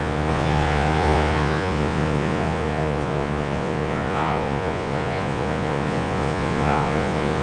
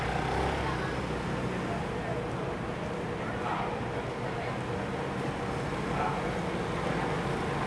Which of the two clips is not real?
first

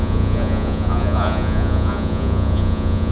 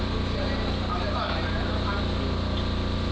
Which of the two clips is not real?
first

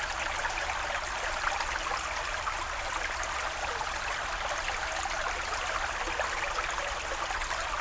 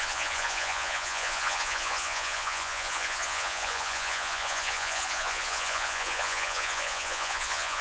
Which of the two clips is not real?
second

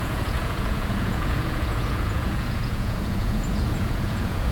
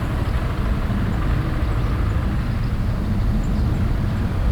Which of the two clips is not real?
first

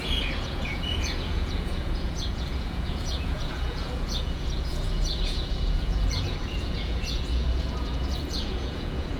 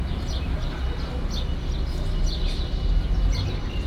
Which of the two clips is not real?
first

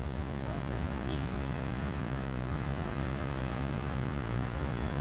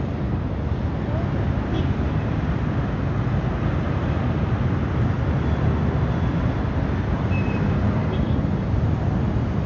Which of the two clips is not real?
first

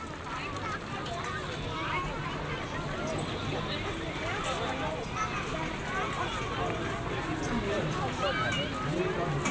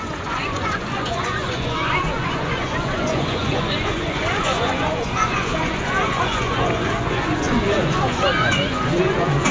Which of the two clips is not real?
second